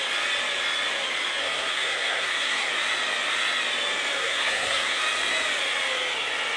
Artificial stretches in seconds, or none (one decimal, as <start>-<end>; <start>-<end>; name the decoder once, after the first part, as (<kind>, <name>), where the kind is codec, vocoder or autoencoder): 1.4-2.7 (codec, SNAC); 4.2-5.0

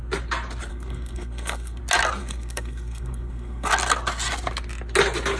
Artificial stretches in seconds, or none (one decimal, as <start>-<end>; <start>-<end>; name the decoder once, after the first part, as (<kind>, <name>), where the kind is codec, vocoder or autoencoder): 0.7-1.8 (codec, SNAC); 2.2-3.7

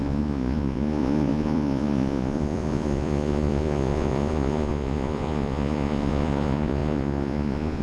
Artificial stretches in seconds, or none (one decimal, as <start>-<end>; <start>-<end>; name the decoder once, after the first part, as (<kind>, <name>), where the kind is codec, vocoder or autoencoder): 0.0-7.8 (vocoder, Vocos)